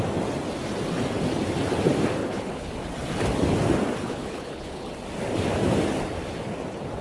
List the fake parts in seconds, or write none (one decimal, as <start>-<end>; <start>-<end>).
2.2-2.7; 4.0-4.9